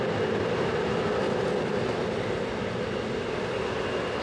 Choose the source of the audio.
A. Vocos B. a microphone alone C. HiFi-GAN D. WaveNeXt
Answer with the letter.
B